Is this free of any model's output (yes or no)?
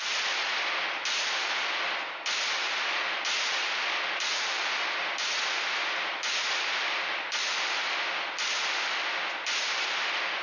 yes